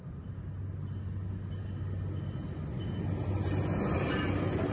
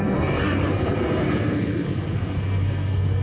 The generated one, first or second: second